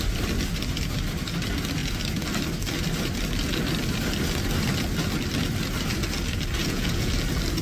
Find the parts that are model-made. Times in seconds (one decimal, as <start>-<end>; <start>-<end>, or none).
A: 6.6-7.1